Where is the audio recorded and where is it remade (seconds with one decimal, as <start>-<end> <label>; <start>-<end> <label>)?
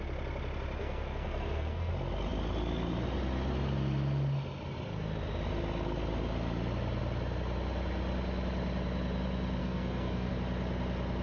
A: 0.0-0.8 recorded; 0.8-1.9 remade; 1.9-9.6 recorded; 9.6-10.3 remade; 10.3-11.2 recorded